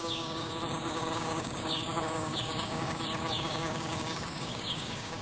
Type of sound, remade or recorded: remade